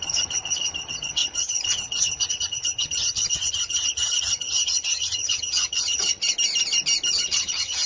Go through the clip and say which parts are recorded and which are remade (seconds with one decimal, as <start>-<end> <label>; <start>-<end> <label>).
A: 0.0-6.2 remade; 6.2-7.1 recorded; 7.1-7.9 remade